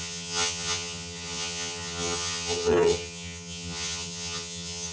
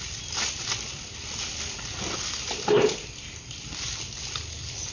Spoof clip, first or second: first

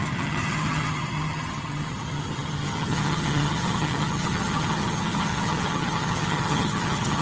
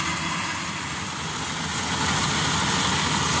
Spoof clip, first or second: first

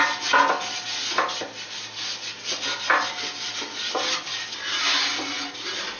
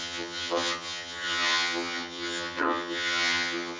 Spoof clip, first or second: second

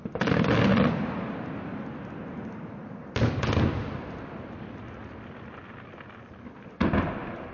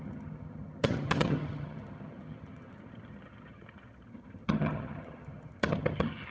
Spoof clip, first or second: second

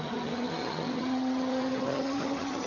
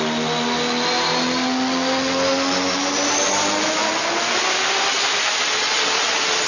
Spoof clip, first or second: first